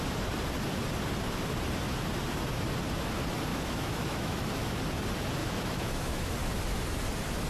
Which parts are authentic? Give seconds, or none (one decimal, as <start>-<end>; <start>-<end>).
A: 0.0-3.5; 4.8-5.4; 6.3-7.5